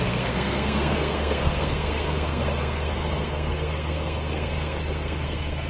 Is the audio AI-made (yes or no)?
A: yes